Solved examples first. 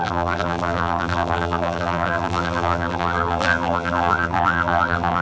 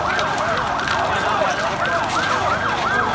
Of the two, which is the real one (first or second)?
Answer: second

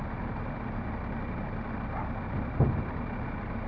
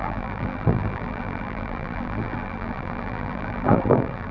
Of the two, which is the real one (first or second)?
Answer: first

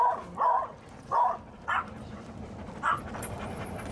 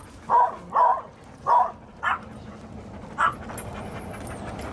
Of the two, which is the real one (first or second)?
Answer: second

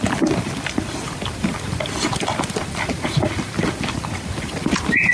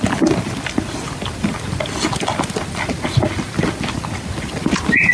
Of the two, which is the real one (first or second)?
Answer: second